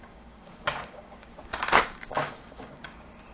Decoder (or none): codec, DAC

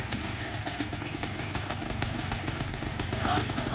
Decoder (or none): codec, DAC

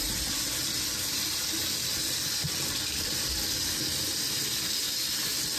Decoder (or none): none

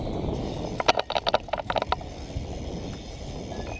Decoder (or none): none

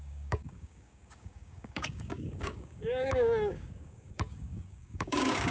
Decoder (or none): codec, DAC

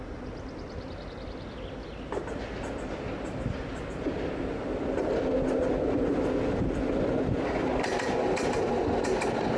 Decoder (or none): none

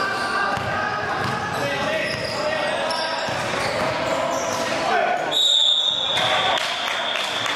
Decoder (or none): none